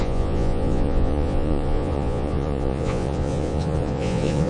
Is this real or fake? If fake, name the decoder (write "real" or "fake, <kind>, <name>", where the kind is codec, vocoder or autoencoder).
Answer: fake, vocoder, Vocos